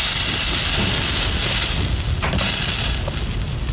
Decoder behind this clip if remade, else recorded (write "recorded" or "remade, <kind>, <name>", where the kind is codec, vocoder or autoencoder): recorded